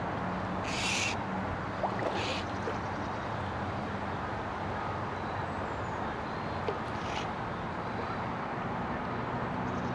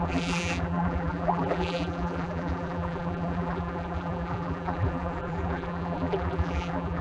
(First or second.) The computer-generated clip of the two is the second